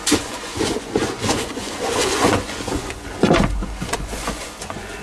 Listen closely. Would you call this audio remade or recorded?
remade